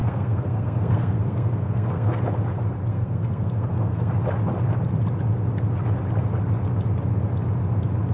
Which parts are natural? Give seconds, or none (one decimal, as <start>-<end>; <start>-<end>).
2.2-2.9; 4.1-8.1